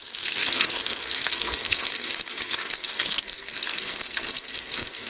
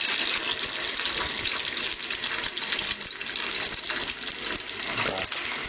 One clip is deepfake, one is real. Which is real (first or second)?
second